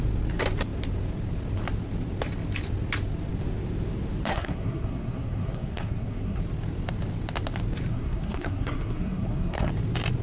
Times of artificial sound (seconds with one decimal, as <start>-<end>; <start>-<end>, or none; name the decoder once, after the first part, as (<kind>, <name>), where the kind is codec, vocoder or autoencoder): 4.3-6.4 (codec, SNAC); 7.9-9.7